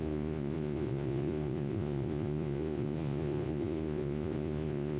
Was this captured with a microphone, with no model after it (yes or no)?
no